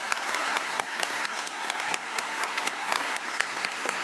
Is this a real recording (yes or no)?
no